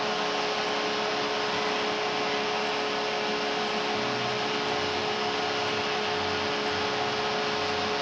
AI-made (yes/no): no